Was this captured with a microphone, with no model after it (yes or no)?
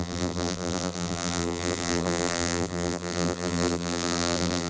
no